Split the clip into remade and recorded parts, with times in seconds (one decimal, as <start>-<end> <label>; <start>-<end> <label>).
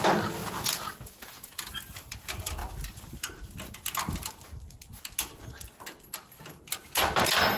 0.0-0.4 recorded; 0.4-1.7 remade; 1.7-7.6 recorded